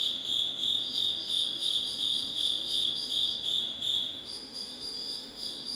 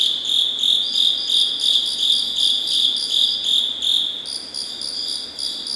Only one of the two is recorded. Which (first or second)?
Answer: second